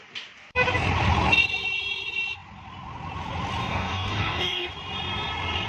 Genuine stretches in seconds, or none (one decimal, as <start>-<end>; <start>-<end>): 0.0-3.6; 4.7-5.7